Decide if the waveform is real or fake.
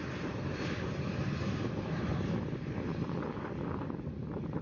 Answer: fake